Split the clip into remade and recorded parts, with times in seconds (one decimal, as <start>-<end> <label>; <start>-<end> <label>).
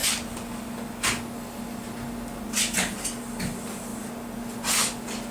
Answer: 0.0-5.3 recorded